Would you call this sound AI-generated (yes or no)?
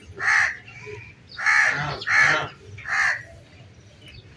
no